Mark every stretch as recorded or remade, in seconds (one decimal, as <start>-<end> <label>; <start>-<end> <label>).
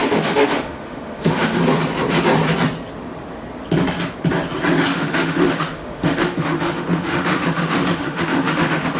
0.0-1.6 remade; 1.6-4.9 recorded; 4.9-9.0 remade